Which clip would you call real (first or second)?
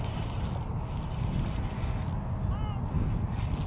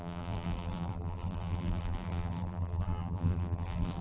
first